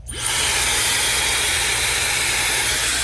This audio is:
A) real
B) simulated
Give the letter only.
A